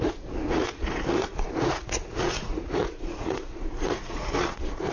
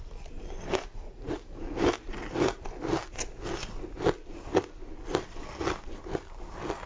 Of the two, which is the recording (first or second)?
second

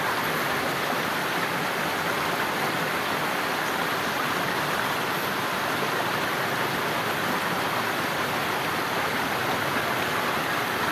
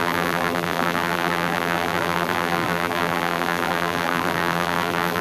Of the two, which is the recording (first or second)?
first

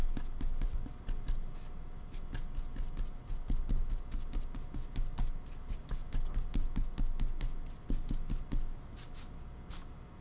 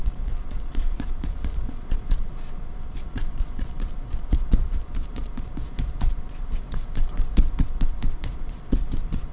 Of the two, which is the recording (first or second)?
first